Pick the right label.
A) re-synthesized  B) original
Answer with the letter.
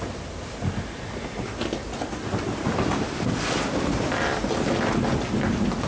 B